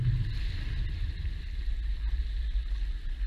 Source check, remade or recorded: recorded